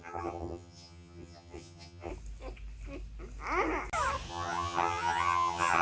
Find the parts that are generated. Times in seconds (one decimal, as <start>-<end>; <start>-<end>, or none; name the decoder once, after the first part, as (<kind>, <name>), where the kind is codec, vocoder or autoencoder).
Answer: 0.0-2.1 (vocoder, HiFi-GAN); 4.3-5.8